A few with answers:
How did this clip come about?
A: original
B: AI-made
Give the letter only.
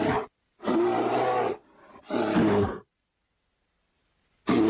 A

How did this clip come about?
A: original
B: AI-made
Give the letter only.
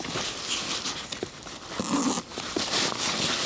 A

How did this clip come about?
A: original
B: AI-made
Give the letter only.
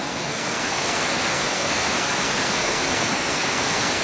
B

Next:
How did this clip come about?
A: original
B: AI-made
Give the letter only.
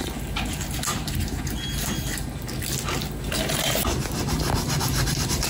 A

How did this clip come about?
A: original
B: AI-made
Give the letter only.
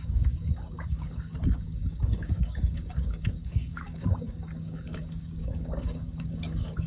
B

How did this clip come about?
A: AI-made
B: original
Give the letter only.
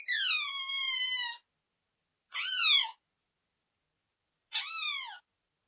B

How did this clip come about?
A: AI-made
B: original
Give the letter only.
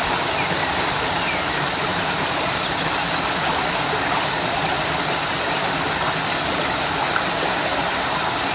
B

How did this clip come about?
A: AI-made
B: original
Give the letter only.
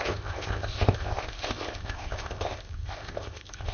A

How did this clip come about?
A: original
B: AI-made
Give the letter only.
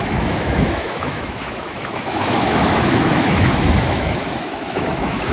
B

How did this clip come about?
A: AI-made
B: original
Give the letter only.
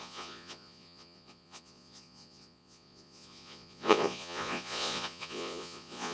A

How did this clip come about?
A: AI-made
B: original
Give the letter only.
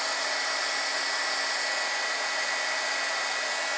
B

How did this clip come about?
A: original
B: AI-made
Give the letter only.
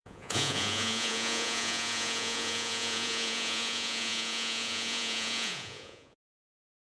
B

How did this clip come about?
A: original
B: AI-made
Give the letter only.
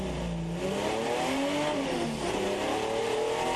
A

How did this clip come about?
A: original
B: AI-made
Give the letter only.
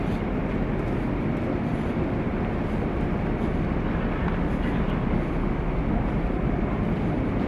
A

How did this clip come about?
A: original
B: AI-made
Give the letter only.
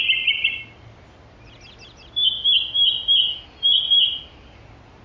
A